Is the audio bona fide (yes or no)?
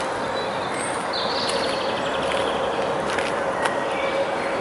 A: yes